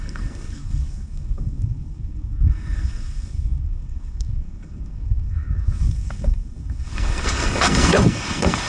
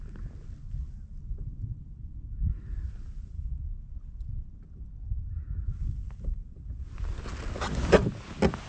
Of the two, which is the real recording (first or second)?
second